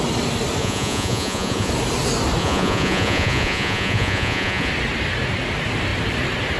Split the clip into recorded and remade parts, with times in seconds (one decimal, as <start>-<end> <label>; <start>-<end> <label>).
0.0-0.6 recorded; 0.6-1.7 remade; 1.7-2.4 recorded; 2.4-4.7 remade; 4.7-6.6 recorded